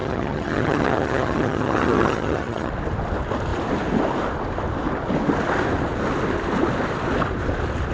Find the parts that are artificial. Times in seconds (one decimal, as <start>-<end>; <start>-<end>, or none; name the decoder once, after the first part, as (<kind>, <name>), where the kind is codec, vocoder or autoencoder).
0.0-2.7 (vocoder, HiFi-GAN)